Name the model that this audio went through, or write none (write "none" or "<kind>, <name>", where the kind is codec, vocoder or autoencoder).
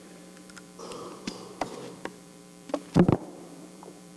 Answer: vocoder, BigVGAN v2